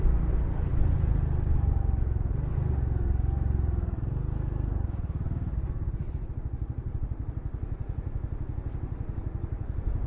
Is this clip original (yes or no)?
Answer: yes